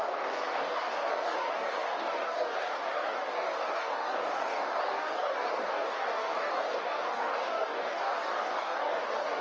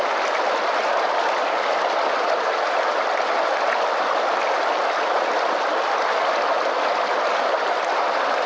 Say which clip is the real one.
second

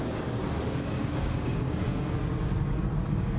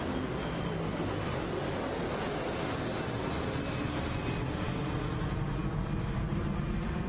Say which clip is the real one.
second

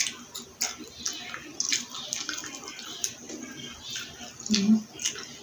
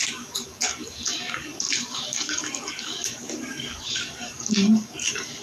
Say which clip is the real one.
first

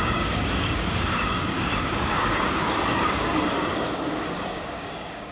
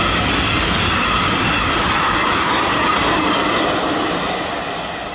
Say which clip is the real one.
second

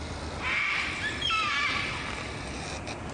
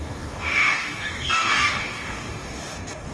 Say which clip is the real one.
first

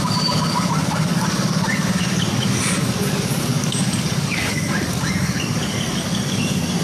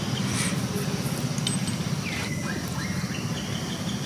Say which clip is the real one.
second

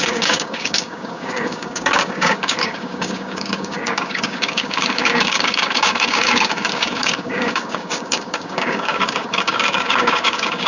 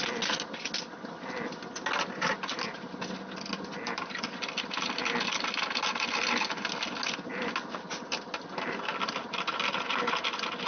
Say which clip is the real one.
second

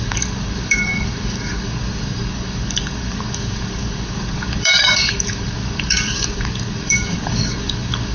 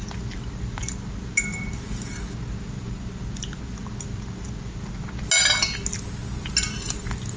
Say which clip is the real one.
second